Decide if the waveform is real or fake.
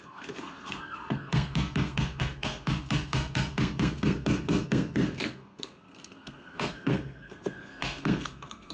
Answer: fake